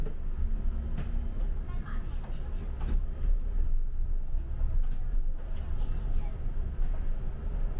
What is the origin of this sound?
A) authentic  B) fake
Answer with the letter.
A